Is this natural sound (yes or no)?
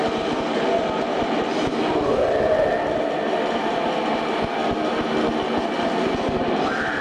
yes